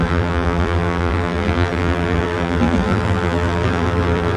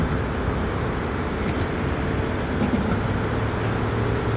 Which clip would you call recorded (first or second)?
second